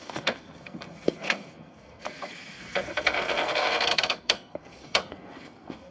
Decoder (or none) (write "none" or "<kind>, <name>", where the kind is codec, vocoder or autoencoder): codec, SNAC